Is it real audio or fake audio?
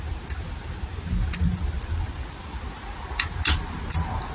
real